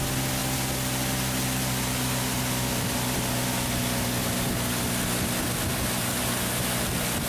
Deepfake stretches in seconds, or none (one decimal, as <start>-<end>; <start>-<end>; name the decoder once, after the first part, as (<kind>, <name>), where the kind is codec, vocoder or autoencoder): none